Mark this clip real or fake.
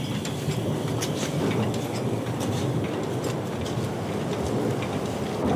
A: real